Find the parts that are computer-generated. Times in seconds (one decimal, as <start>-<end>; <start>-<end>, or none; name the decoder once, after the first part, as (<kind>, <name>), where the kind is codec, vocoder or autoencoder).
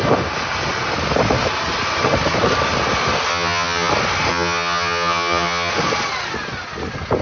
3.3-3.9 (vocoder, HiFi-GAN); 4.3-5.7